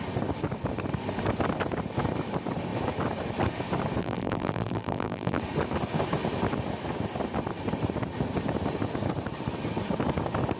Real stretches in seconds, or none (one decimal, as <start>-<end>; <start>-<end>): 0.0-4.0; 5.4-10.6